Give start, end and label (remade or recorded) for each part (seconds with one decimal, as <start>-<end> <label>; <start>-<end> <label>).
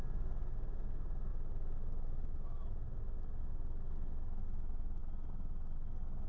0.0-6.3 recorded